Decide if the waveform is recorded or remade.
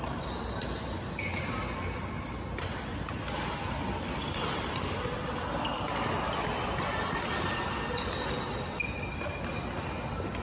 recorded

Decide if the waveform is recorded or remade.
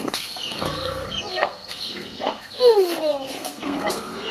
remade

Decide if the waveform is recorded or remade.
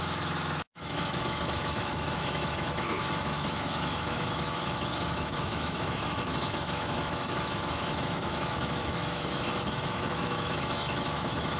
remade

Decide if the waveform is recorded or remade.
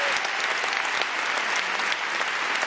recorded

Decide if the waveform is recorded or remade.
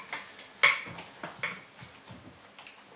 recorded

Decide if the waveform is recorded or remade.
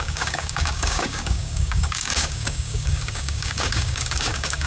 remade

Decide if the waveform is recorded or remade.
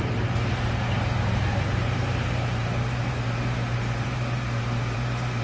remade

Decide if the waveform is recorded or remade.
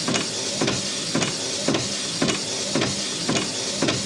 recorded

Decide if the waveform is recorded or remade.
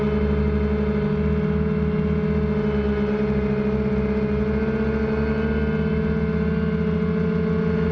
recorded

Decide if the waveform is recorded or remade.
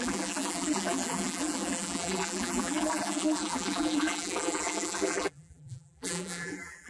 remade